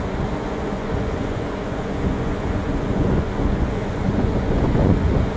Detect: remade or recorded remade